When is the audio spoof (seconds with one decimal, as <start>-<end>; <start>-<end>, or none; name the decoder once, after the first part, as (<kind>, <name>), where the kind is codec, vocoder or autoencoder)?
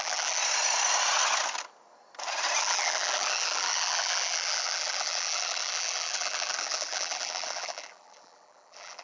0.0-0.4 (vocoder, BigVGAN v2); 2.6-9.0